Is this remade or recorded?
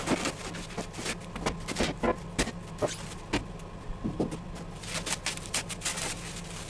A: recorded